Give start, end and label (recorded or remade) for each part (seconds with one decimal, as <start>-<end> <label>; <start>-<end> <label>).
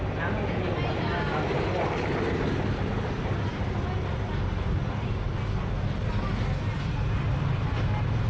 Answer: 0.0-8.3 recorded